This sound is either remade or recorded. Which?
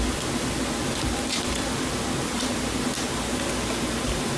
recorded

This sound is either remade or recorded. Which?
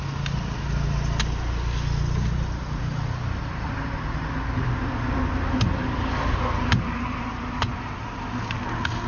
recorded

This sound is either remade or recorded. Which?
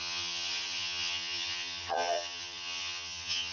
remade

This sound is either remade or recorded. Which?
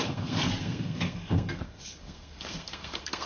remade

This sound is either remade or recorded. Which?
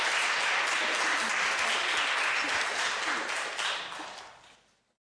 recorded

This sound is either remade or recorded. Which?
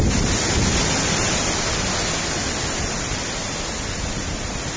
recorded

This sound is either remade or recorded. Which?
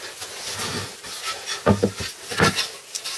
recorded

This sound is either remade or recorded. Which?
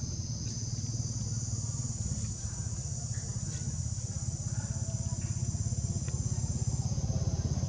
recorded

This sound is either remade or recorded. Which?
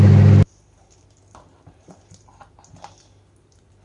recorded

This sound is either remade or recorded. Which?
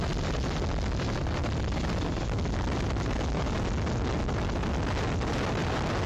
recorded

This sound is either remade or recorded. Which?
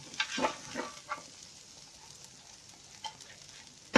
recorded